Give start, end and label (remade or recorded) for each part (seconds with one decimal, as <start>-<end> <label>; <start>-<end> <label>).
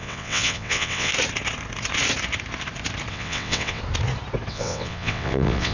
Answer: 0.0-1.1 remade; 1.1-3.1 recorded; 3.1-3.8 remade; 3.8-4.5 recorded; 4.5-5.7 remade